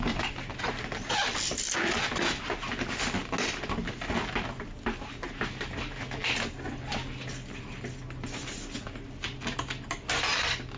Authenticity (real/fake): real